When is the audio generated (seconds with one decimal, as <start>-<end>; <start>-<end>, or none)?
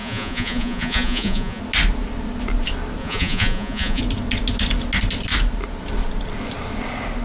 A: 0.0-1.6; 3.0-4.0